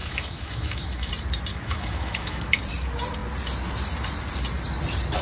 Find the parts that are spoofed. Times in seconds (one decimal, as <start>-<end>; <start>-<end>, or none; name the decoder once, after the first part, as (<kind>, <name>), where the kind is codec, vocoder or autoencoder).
0.0-1.1 (autoencoder, DAC-VAE); 1.5-2.5